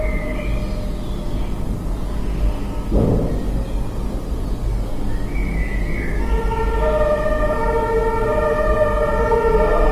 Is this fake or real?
real